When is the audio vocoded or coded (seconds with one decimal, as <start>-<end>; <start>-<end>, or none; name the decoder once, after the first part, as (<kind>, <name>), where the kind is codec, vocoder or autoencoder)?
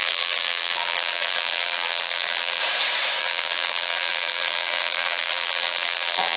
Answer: 0.0-2.6 (vocoder, BigVGAN v2); 3.2-6.4